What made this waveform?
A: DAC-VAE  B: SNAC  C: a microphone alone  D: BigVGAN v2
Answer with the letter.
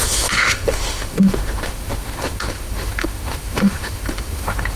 A